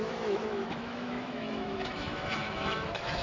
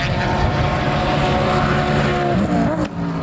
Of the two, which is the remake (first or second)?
first